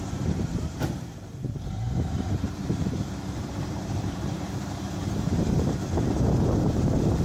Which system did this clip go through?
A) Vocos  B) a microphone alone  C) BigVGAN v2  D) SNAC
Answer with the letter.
C